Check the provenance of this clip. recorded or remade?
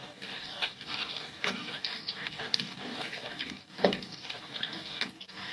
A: remade